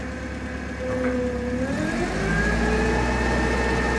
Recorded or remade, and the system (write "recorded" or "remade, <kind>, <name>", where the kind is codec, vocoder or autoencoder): recorded